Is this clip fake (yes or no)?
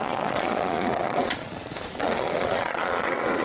yes